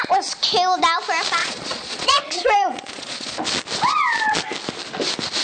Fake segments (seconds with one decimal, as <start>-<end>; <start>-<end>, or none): 1.4-3.4